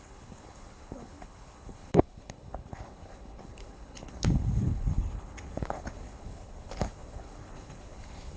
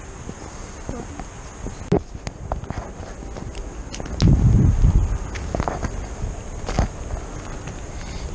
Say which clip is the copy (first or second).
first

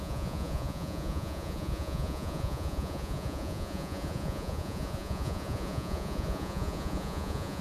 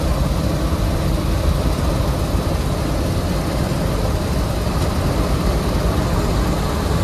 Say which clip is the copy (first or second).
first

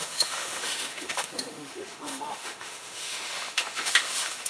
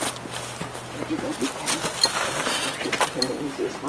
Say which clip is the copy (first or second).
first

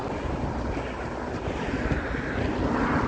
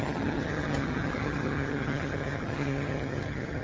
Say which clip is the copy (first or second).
second